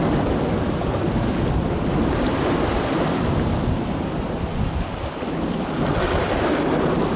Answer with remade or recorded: recorded